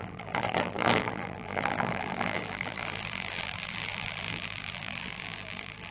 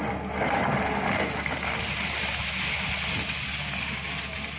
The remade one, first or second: first